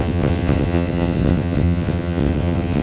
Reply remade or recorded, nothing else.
remade